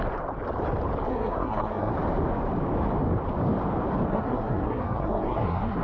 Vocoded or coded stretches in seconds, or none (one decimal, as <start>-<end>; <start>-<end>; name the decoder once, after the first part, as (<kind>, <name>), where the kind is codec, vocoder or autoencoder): 1.1-1.9 (codec, SNAC); 4.1-5.8